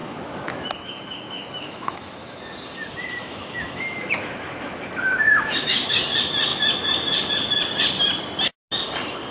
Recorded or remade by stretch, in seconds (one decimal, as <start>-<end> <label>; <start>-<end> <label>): 0.0-2.4 remade; 2.4-3.2 recorded; 3.2-6.0 remade; 6.0-9.3 recorded